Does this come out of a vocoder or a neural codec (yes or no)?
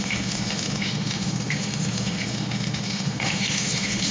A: yes